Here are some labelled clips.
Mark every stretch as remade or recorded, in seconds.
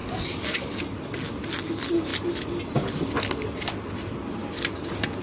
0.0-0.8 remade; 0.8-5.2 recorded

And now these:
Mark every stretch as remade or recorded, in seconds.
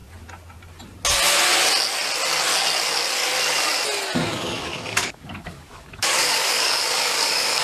0.0-4.3 recorded; 4.3-7.6 remade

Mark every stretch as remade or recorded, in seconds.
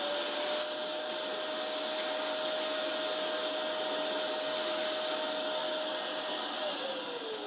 0.0-7.5 recorded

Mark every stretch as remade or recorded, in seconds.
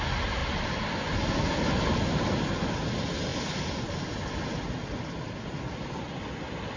0.0-6.8 recorded